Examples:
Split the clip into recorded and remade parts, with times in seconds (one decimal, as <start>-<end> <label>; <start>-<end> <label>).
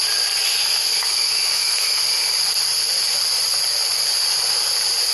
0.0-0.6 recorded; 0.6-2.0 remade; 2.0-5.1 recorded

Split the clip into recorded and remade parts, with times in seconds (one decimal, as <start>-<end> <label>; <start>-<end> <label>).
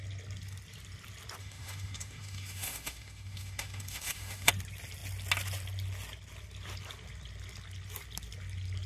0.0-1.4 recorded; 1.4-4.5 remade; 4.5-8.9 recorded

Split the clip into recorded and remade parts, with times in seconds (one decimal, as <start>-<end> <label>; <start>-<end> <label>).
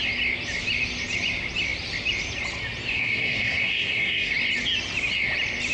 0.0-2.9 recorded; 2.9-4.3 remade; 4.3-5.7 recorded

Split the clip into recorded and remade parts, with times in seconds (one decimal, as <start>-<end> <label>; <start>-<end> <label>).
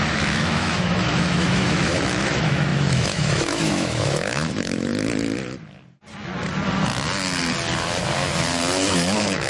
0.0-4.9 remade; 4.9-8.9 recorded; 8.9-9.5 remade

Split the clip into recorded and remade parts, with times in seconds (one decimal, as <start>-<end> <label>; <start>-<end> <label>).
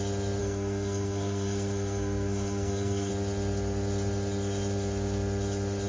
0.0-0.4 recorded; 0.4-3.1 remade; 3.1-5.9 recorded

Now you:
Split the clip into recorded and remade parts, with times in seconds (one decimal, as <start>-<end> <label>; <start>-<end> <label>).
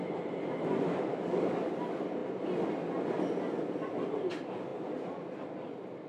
0.0-1.1 recorded; 1.1-1.7 remade; 1.7-6.1 recorded